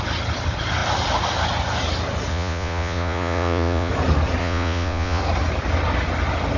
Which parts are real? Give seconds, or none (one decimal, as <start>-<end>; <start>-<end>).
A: 0.0-2.3; 3.9-4.4; 5.2-6.6